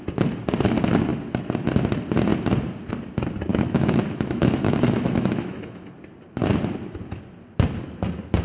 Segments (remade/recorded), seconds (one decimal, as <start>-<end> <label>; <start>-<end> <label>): 0.0-3.5 recorded; 3.5-5.9 remade; 5.9-8.4 recorded